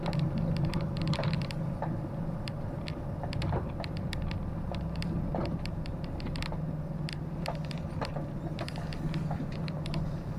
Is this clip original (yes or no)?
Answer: yes